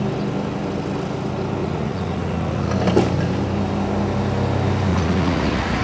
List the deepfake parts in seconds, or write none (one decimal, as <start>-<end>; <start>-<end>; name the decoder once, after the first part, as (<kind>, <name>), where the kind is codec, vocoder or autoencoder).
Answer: 1.6-2.7 (vocoder, Vocos); 4.9-5.8